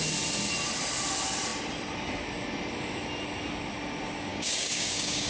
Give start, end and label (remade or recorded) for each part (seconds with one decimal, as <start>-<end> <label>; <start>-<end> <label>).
0.0-4.3 recorded; 4.3-5.3 remade